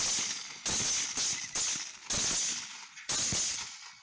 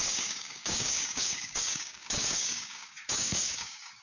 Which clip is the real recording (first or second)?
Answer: first